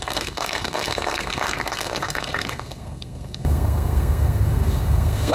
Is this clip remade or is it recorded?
remade